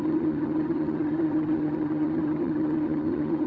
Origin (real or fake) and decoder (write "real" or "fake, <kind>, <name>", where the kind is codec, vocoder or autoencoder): fake, vocoder, HiFi-GAN